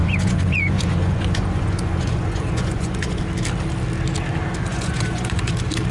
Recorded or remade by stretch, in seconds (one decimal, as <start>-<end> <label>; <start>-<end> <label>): 0.0-3.2 remade; 3.2-4.7 recorded; 4.7-5.5 remade; 5.5-5.9 recorded